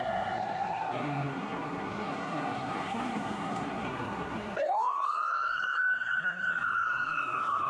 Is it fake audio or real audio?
fake